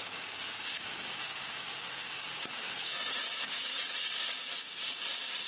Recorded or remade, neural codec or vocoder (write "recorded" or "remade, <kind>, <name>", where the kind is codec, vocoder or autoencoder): remade, codec, DAC